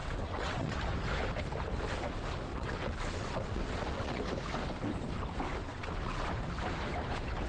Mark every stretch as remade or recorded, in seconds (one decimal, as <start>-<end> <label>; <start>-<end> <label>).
0.0-0.8 remade; 0.8-2.5 recorded; 2.5-4.2 remade; 4.2-5.7 recorded; 5.7-6.3 remade; 6.3-7.5 recorded